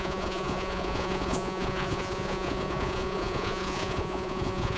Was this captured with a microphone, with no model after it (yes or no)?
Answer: no